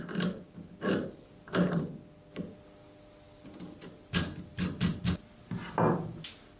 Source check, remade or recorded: recorded